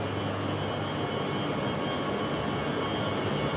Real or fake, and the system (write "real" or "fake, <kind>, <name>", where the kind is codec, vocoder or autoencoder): real